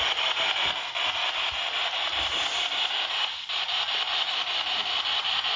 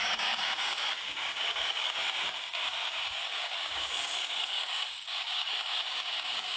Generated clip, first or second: second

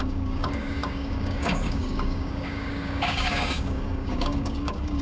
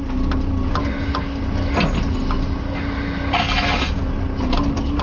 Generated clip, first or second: first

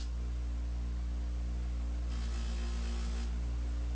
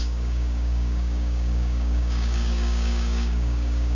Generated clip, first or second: second